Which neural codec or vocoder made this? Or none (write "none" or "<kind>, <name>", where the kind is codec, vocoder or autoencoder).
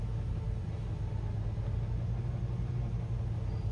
none